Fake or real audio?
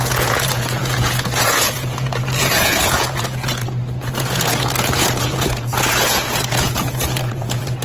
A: fake